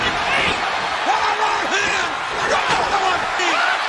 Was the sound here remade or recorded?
recorded